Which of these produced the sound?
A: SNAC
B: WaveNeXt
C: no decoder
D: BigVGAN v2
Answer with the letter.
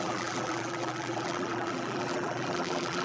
D